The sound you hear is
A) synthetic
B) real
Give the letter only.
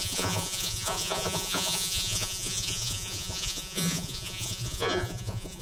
A